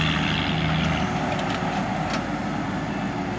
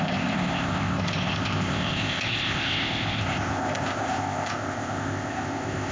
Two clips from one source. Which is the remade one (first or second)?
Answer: second